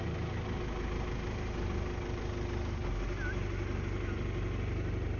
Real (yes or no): yes